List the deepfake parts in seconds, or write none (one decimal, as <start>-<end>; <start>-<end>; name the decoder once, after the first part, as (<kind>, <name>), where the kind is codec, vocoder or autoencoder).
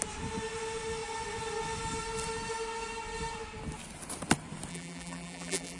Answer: 4.7-5.8 (vocoder, BigVGAN v2)